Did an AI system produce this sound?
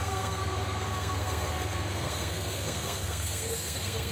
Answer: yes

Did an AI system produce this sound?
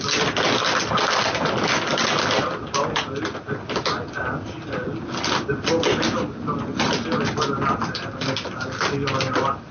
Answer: no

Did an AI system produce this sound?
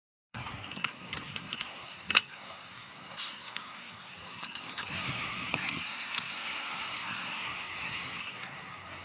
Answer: yes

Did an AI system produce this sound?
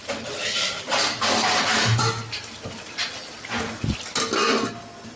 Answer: no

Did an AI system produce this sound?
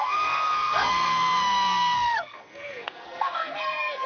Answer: yes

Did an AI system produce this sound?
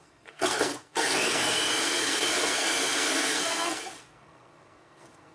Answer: yes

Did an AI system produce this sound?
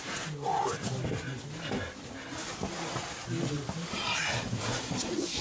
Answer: no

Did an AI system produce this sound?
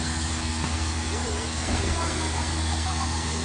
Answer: yes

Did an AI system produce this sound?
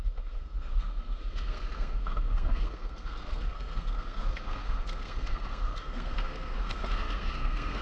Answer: yes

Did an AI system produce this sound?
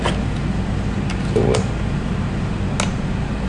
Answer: no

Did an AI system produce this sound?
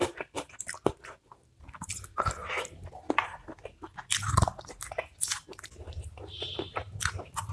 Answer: no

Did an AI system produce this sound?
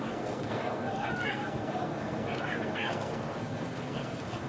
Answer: yes